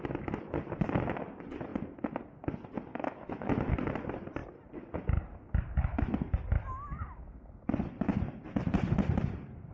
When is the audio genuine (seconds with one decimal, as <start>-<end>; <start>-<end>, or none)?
0.0-2.9; 3.7-9.7